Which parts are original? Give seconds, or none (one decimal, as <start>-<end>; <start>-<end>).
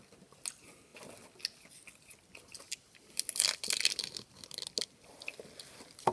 0.0-6.1